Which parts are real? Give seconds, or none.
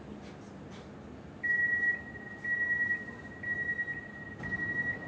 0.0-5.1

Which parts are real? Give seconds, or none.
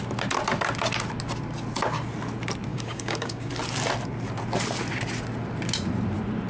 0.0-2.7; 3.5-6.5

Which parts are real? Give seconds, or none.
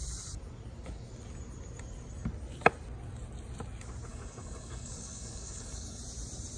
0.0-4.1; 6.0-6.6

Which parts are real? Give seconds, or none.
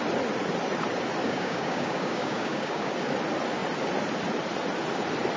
0.0-1.2; 2.9-5.4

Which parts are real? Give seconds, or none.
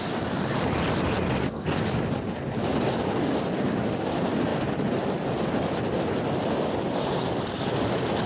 0.0-8.3